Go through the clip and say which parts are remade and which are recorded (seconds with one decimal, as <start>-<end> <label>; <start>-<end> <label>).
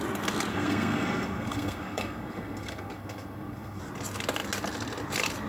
0.0-0.5 recorded; 0.5-3.8 remade; 3.8-5.5 recorded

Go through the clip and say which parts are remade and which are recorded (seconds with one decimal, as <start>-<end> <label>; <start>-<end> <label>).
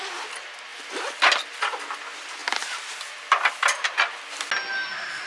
0.0-5.3 recorded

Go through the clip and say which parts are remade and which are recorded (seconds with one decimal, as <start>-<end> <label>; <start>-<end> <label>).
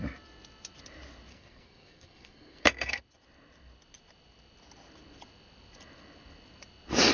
0.0-1.3 recorded; 1.3-3.0 remade; 3.0-7.1 recorded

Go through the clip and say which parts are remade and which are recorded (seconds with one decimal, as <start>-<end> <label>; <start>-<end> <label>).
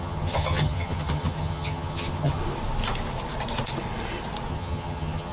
0.0-2.4 remade; 2.4-4.5 recorded; 4.5-5.3 remade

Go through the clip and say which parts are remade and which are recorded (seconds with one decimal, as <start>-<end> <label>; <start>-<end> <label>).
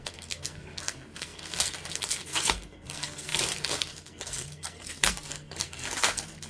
0.0-6.5 remade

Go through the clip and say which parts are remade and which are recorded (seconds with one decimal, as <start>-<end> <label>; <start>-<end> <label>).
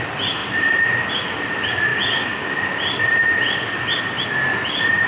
0.0-5.1 recorded